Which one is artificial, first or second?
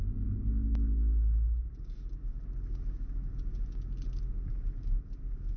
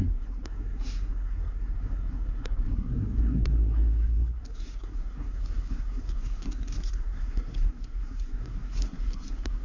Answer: second